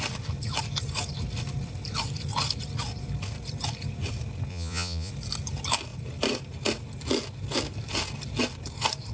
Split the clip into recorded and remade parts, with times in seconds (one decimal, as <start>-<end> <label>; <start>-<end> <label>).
0.0-4.5 recorded; 4.5-5.1 remade; 5.1-9.1 recorded